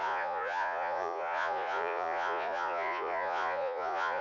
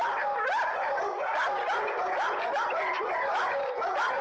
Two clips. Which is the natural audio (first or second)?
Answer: second